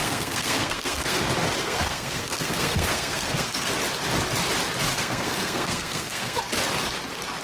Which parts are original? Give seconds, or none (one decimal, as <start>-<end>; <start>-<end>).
1.2-1.6; 3.7-4.9; 6.4-7.4